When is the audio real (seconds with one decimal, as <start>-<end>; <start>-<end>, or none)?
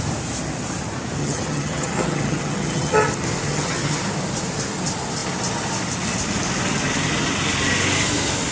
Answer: 0.0-1.2; 3.1-3.5; 4.0-8.5